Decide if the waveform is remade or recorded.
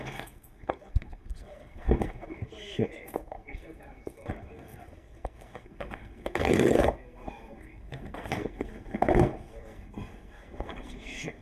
remade